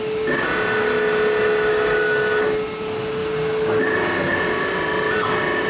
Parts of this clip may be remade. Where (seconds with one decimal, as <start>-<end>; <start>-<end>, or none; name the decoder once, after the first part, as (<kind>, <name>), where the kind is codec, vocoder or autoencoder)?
1.7-2.4 (codec, DAC)